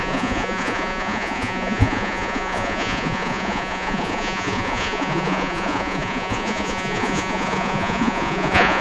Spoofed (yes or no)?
yes